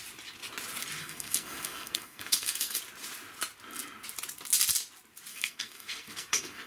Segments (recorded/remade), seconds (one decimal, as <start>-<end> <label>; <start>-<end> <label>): 0.0-1.0 recorded; 1.0-2.8 remade; 2.8-5.3 recorded; 5.3-6.7 remade